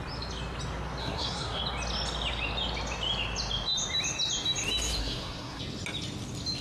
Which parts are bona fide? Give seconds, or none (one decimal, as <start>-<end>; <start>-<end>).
0.0-1.0; 1.6-5.0; 5.6-6.6